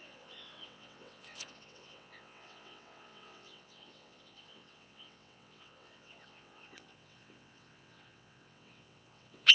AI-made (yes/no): yes